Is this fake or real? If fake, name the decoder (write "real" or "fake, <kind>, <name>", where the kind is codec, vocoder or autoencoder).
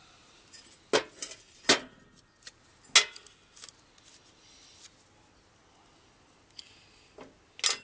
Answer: real